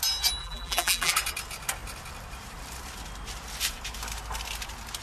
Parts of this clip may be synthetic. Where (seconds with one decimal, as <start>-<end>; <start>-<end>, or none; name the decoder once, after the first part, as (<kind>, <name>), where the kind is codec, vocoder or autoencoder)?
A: 0.4-1.1 (vocoder, BigVGAN v2)

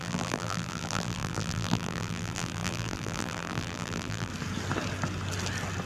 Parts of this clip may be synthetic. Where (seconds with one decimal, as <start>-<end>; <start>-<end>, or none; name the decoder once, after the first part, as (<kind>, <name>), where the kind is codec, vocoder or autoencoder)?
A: 0.0-4.3 (vocoder, BigVGAN v2)

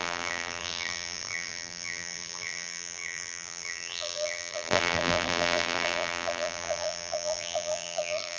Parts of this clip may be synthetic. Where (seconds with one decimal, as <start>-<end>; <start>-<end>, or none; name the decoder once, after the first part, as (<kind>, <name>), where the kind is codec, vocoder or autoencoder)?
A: 0.0-8.4 (vocoder, BigVGAN v2)

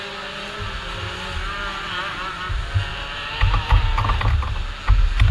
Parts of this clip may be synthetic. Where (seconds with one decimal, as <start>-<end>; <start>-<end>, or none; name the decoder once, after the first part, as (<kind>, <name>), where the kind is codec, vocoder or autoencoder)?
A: 2.9-3.5 (vocoder, BigVGAN v2)

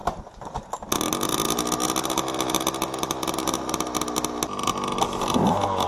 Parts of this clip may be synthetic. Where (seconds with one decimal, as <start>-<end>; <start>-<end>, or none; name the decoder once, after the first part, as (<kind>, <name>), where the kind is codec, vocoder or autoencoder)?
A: 0.0-0.7 (vocoder, BigVGAN v2)

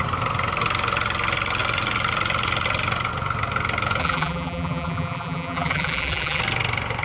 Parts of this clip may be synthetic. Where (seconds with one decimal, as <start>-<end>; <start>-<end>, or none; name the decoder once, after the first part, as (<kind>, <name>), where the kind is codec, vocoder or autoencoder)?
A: 4.0-6.4 (vocoder, BigVGAN v2)